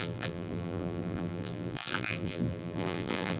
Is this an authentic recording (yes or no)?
no